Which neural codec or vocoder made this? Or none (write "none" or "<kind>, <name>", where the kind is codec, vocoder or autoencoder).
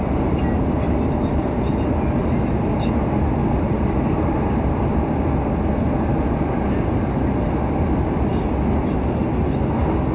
none